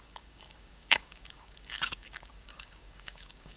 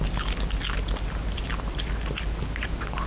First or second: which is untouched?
second